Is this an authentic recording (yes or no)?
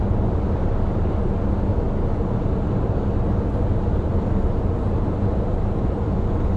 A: yes